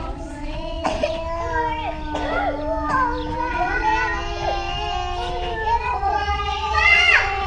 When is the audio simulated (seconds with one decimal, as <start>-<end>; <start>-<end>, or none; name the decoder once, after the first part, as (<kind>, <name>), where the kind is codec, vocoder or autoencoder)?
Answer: 0.0-1.2 (vocoder, Vocos); 3.5-3.9; 5.8-7.5